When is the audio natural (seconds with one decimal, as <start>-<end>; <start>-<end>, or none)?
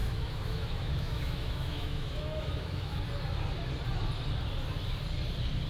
3.0-5.7